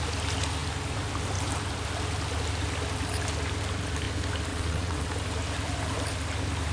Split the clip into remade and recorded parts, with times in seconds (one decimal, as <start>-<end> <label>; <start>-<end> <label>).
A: 0.0-4.5 recorded; 4.5-5.1 remade; 5.1-6.7 recorded